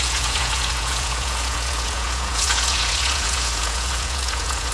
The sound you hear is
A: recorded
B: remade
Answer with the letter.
B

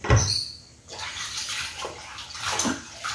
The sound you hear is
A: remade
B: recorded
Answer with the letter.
B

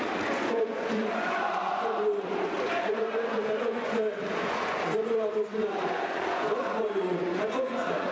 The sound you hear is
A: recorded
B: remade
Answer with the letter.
B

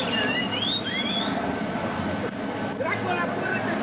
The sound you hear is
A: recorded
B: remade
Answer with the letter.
A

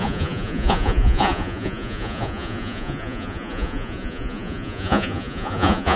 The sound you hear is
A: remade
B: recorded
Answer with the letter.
A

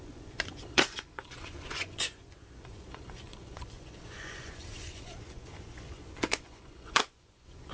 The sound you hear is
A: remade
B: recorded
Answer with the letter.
A